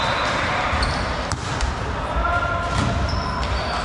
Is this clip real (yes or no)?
yes